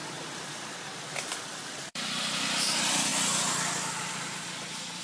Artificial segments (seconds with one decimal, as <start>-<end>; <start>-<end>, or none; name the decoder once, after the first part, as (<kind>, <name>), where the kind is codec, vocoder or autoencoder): 1.1-5.0 (vocoder, BigVGAN v2)